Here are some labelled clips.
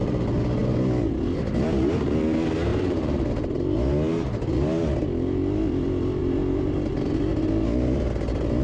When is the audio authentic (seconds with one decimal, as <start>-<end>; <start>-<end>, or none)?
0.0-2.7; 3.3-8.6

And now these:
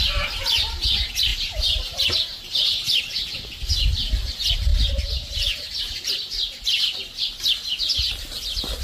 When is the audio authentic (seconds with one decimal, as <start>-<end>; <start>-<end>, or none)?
0.0-1.3; 3.0-4.7; 6.6-8.8

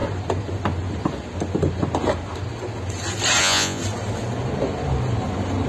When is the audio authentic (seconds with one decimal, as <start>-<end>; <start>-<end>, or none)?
0.0-3.4; 3.8-5.7

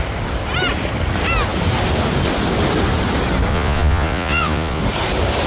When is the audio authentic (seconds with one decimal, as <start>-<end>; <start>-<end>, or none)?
0.0-3.5; 4.8-5.5